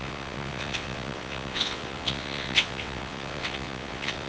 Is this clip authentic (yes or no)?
no